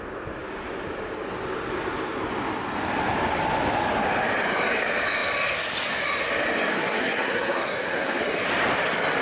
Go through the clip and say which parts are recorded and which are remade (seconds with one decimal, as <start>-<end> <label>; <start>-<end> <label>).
0.0-6.7 recorded; 6.7-8.2 remade; 8.2-9.2 recorded